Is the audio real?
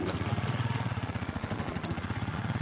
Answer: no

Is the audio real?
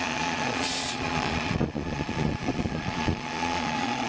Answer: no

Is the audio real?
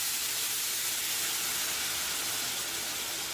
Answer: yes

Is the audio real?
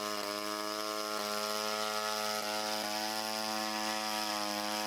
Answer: yes